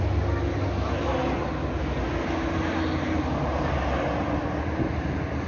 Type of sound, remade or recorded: recorded